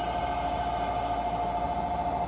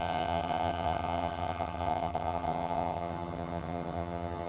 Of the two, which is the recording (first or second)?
first